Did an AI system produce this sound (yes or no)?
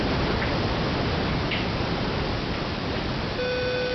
no